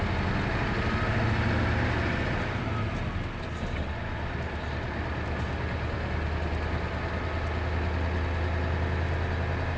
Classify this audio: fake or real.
real